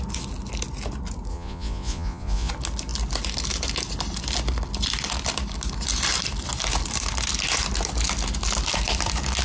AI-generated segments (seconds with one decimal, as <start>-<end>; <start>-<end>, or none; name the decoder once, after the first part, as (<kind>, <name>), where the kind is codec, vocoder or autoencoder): 1.3-2.5 (vocoder, Vocos)